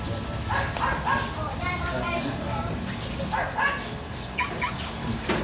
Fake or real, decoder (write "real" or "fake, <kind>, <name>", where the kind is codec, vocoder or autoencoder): real